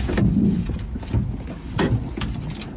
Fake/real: real